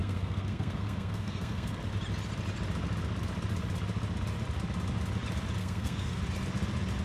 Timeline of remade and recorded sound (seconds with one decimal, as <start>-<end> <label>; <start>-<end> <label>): 0.0-1.8 remade; 1.8-5.6 recorded; 5.6-6.2 remade; 6.2-7.0 recorded